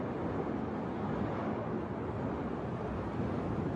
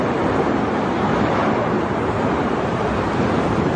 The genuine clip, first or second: first